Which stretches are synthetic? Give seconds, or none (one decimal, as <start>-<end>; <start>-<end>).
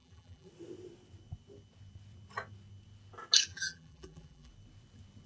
0.0-0.5; 3.5-4.5